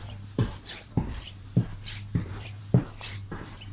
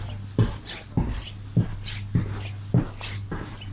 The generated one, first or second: first